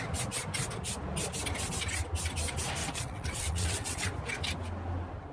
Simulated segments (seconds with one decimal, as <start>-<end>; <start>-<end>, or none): 2.8-4.1

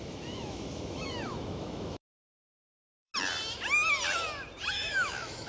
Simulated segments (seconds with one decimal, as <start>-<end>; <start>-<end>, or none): 0.0-3.1; 4.7-5.5